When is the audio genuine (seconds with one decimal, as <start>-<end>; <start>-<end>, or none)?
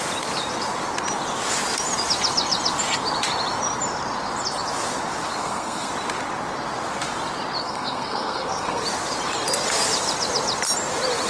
0.0-5.4; 5.9-7.6; 8.8-11.3